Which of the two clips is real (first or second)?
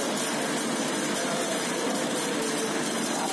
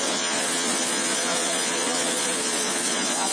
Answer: first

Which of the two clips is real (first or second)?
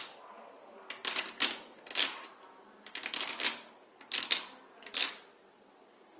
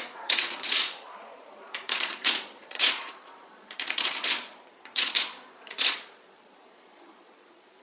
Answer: first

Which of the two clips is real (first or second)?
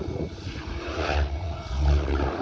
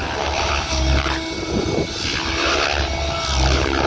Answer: second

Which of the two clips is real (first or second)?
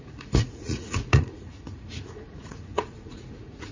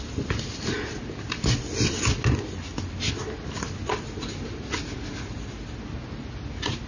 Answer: second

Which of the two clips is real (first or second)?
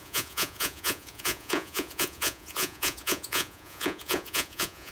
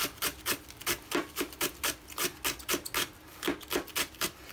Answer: second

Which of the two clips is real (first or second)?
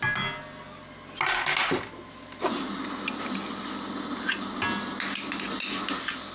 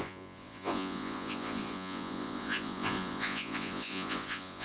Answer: first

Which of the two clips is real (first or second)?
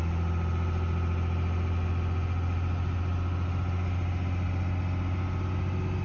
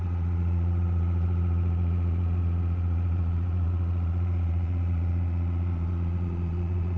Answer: first